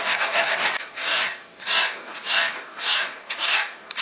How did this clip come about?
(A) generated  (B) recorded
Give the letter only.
A